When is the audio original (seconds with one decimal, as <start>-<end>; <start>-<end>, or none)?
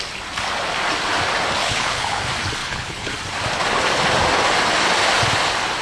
0.0-1.6; 2.2-2.6; 3.1-5.8